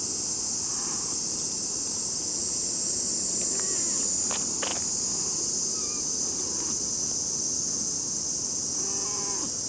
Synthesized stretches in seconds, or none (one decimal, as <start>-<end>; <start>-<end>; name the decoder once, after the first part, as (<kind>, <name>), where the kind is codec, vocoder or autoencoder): none